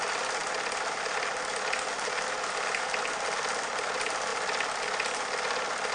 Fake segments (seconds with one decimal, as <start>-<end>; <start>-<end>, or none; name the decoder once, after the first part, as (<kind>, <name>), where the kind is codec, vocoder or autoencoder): none